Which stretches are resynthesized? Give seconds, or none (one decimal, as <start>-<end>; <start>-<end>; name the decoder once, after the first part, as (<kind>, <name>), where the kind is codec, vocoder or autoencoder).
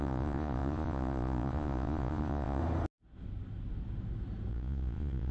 0.0-2.6 (vocoder, Vocos); 4.5-5.3